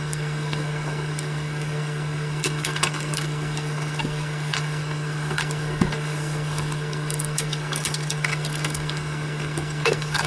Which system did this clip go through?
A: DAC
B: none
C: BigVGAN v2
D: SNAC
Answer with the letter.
D